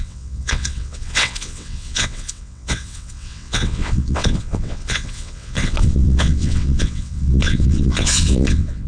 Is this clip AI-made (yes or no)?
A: yes